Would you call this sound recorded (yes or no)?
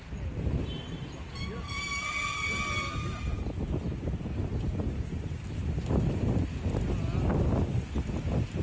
yes